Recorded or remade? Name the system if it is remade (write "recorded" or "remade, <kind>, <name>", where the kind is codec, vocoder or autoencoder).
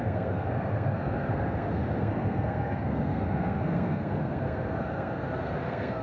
remade, codec, SNAC